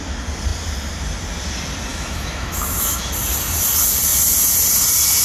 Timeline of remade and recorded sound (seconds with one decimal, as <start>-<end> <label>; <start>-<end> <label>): 0.0-1.9 recorded; 1.9-3.1 remade; 3.1-5.2 recorded